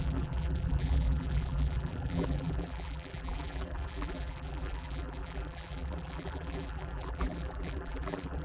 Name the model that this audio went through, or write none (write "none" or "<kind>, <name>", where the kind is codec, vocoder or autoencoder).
vocoder, BigVGAN v2